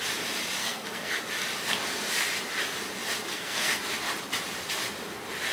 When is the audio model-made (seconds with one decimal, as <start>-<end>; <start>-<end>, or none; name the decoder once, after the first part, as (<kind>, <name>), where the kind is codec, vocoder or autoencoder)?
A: 0.6-1.2 (codec, SNAC); 3.3-3.8

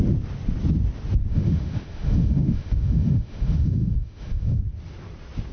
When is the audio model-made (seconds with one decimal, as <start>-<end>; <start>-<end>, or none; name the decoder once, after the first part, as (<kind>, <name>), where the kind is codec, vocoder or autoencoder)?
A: 1.3-4.6 (autoencoder, DAC-VAE)

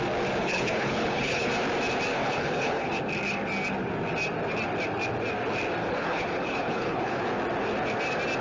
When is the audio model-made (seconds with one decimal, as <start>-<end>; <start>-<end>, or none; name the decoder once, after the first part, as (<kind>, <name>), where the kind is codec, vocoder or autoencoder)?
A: 0.4-1.5 (codec, HILCodec); 2.1-2.9; 5.8-7.2

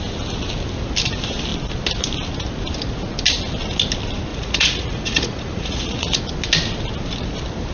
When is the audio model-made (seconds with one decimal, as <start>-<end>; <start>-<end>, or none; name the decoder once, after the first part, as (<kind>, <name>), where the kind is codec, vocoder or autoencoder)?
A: 4.3-6.2 (vocoder, Vocos)

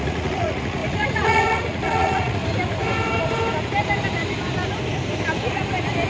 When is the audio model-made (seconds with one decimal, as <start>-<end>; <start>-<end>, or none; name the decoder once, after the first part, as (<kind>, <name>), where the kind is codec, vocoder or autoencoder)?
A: 0.0-2.4 (vocoder, Vocos)

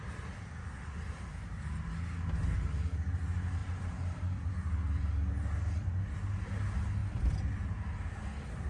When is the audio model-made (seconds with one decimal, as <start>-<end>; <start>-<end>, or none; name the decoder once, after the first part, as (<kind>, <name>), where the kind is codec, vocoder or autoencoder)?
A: 3.6-4.5 (vocoder, BigVGAN v2)

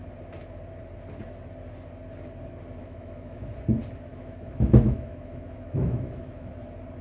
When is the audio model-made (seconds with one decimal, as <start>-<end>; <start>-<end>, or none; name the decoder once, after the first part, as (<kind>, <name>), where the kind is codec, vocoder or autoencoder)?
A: 2.8-3.5 (autoencoder, DAC-VAE); 4.1-6.5

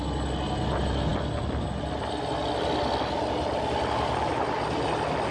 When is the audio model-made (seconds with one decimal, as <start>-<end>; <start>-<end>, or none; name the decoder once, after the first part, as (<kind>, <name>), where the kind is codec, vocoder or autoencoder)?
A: none